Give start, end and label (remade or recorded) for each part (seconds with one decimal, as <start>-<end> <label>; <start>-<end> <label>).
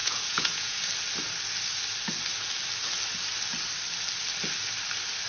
0.0-0.8 remade; 0.8-5.3 recorded